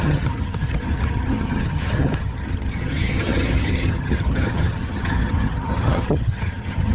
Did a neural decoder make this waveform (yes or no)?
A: yes